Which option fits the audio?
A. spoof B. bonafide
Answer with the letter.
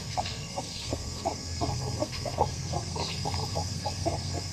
A